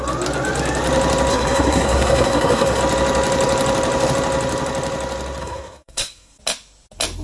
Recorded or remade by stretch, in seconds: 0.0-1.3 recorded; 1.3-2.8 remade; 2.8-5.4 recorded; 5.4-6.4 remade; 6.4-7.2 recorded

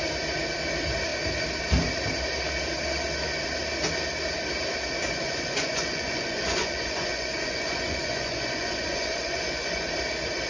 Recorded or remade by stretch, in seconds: 0.0-5.0 recorded; 5.0-9.9 remade; 9.9-10.5 recorded

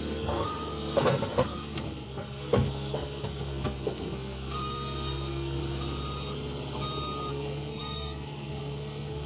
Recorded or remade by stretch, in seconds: 0.0-5.6 remade; 5.6-7.3 recorded; 7.3-9.3 remade